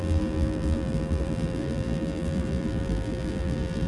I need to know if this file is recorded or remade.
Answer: remade